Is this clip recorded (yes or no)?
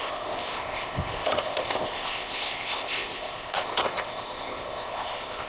no